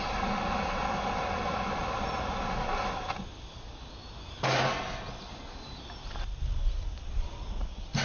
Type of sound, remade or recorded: recorded